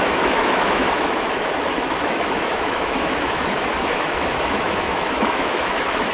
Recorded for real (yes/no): no